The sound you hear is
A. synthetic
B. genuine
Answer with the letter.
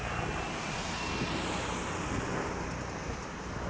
B